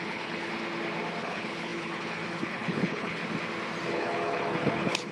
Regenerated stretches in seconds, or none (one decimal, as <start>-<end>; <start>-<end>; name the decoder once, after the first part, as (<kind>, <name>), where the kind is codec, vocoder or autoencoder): 0.0-0.5 (codec, HILCodec); 1.2-3.2; 3.9-5.1